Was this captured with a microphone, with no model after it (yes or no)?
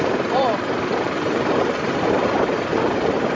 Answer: no